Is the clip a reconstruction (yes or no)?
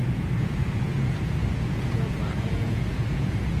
yes